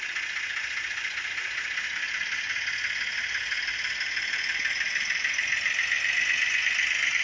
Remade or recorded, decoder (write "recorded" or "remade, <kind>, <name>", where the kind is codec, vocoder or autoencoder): recorded